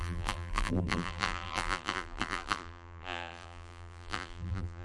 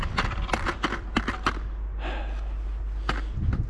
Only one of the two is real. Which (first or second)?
second